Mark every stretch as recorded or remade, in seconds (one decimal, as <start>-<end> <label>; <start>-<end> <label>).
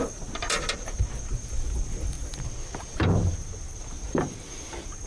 0.0-0.4 recorded; 0.4-3.3 remade; 3.3-5.1 recorded